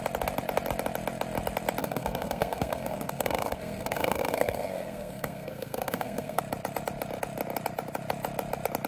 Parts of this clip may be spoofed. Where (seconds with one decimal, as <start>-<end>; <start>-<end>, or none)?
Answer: 1.8-6.4